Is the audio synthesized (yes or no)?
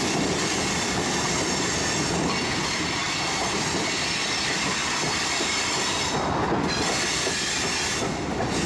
no